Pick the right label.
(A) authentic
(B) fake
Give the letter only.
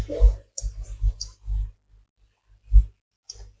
A